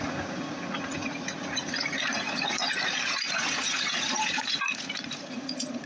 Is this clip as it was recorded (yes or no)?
no